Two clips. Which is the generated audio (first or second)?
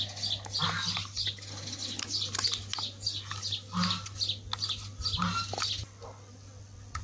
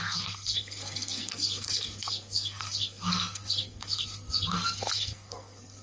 second